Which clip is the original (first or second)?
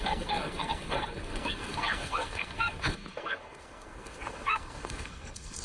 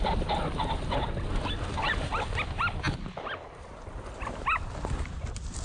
second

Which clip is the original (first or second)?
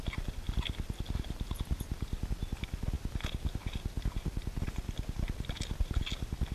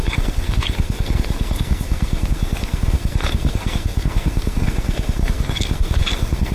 first